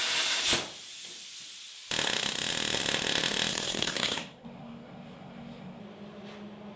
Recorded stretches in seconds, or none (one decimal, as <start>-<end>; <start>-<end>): 0.0-3.5; 5.8-6.8